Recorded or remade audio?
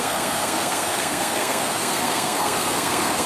remade